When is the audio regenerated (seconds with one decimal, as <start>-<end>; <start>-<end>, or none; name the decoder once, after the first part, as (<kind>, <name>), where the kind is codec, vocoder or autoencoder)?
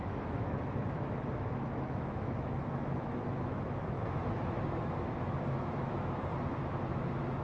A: 0.0-6.3 (autoencoder, DAC-VAE); 6.9-7.4